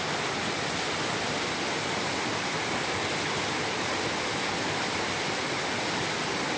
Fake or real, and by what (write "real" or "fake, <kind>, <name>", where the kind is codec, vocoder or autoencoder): real